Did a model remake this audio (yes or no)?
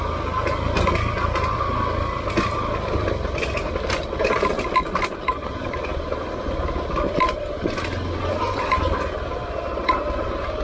no